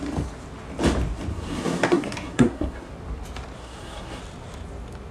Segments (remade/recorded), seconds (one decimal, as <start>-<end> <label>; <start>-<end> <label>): 0.0-1.3 recorded; 1.3-2.9 remade; 2.9-3.6 recorded; 3.6-4.2 remade; 4.2-5.1 recorded